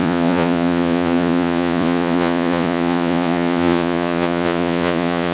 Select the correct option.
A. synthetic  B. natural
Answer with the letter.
A